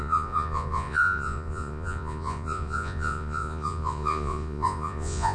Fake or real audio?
fake